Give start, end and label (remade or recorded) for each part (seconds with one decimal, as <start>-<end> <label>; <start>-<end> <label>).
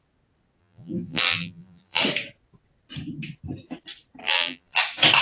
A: 0.0-0.6 recorded; 0.6-2.0 remade; 2.0-4.2 recorded; 4.2-4.8 remade; 4.8-5.2 recorded